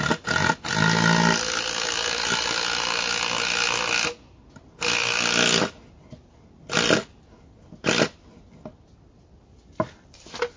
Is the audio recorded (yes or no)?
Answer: yes